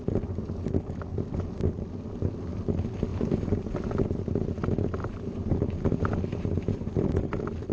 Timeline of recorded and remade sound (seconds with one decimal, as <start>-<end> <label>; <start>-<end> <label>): 0.0-3.1 recorded; 3.1-4.3 remade; 4.3-5.0 recorded; 5.0-7.3 remade; 7.3-7.7 recorded